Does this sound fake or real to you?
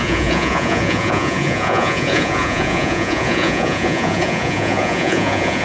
fake